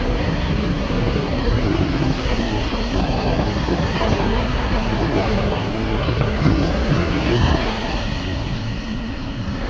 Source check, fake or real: fake